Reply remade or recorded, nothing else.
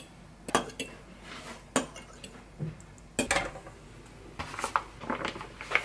recorded